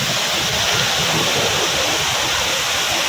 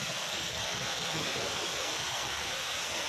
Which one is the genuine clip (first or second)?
first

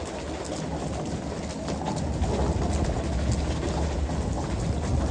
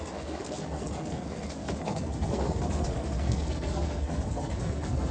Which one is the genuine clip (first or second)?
first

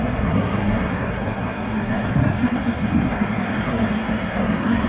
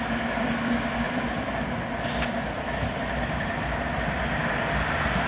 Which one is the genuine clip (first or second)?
second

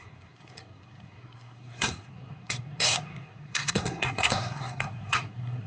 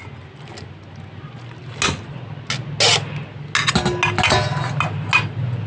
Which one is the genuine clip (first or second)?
second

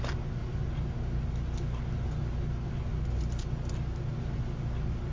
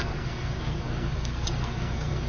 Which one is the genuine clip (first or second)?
first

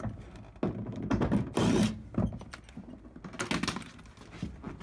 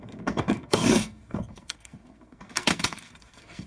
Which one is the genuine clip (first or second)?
first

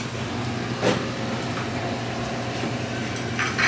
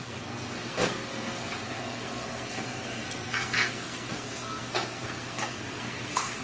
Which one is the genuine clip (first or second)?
first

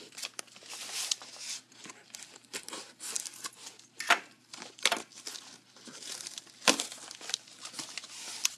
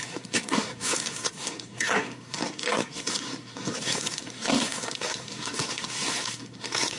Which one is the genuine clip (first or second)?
first